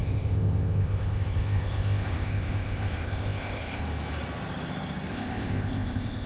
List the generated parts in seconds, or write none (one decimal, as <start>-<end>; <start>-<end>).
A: 0.0-3.8; 5.1-6.3